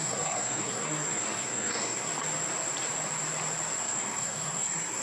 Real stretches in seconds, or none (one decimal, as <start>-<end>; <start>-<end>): 2.1-3.8